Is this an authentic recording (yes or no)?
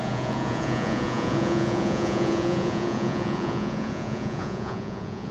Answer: no